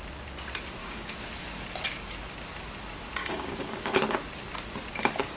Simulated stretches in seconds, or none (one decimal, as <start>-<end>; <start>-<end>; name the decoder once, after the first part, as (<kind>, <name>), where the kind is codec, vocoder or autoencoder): 0.8-1.3 (codec, DAC); 3.2-4.0